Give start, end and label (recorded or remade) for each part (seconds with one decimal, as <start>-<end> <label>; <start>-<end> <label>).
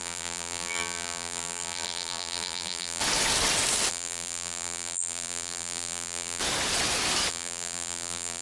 0.0-3.0 remade; 3.0-3.9 recorded; 3.9-6.4 remade; 6.4-7.3 recorded; 7.3-8.4 remade